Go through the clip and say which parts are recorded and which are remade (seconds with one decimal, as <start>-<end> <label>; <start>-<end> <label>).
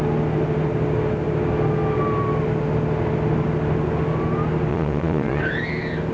0.0-4.7 recorded; 4.7-5.4 remade; 5.4-6.1 recorded